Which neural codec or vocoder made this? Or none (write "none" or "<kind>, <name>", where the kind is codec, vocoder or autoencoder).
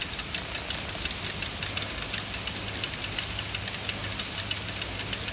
none